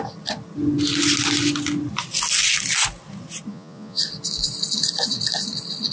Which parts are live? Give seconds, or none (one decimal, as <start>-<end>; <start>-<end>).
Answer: 0.0-3.5; 4.0-5.9